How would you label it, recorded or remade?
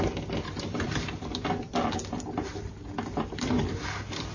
recorded